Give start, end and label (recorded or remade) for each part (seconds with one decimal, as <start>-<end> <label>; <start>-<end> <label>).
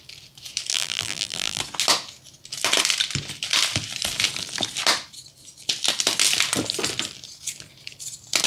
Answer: 0.0-0.7 recorded; 0.7-1.6 remade; 1.6-8.5 recorded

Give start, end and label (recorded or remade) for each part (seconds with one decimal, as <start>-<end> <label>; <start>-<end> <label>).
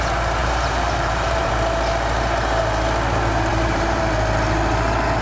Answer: 0.0-0.4 recorded; 0.4-1.5 remade; 1.5-3.5 recorded; 3.5-4.0 remade; 4.0-5.2 recorded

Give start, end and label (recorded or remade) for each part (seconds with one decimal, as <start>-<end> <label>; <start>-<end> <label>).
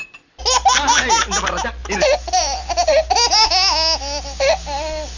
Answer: 0.0-1.8 recorded; 1.8-3.1 remade; 3.1-5.2 recorded